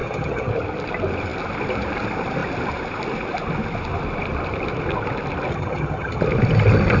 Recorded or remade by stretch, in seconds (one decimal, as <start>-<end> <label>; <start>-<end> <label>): 0.0-0.5 remade; 0.5-5.5 recorded; 5.5-6.2 remade; 6.2-7.0 recorded

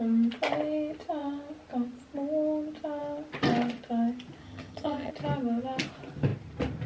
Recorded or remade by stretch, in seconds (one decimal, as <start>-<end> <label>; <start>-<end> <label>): 0.0-4.4 recorded; 4.4-5.1 remade; 5.1-6.9 recorded

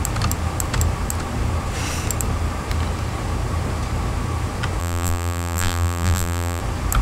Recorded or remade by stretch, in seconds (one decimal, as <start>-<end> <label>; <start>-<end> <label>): 0.0-4.8 recorded; 4.8-6.6 remade; 6.6-7.0 recorded

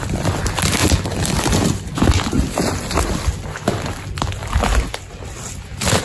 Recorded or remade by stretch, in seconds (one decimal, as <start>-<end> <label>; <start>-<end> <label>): 0.0-6.0 recorded

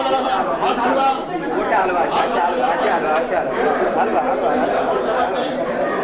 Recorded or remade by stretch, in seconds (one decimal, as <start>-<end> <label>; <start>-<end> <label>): 0.0-4.1 remade; 4.1-5.2 recorded; 5.2-6.0 remade

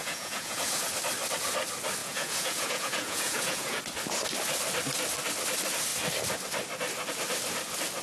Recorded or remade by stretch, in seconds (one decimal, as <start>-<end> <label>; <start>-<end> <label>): 0.0-0.9 remade; 0.9-2.0 recorded; 2.0-3.8 remade; 3.8-8.0 recorded